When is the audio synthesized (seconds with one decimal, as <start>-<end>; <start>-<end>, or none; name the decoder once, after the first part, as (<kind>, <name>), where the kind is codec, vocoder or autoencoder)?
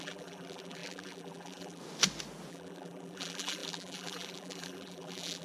0.0-1.8 (vocoder, BigVGAN v2); 2.5-5.4